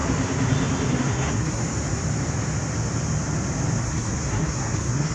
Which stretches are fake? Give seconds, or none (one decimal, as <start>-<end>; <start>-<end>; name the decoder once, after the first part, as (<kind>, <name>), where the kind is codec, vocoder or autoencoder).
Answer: 0.9-1.6 (codec, SNAC); 3.8-5.1